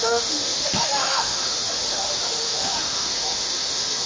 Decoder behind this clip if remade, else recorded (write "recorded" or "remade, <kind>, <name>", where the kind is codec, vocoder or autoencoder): remade, autoencoder, DAC-VAE